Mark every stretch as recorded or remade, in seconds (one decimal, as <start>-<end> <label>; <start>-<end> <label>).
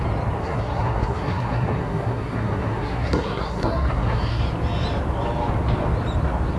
0.0-0.4 recorded; 0.4-4.4 remade; 4.4-6.6 recorded